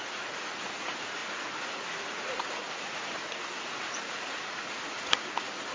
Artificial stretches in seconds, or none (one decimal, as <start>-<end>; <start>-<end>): 0.0-5.7